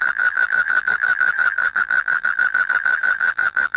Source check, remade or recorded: remade